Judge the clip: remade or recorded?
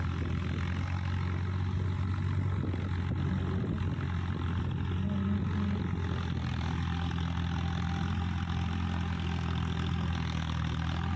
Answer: recorded